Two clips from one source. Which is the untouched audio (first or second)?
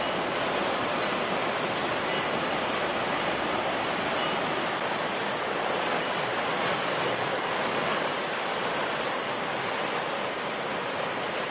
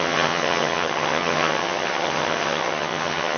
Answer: first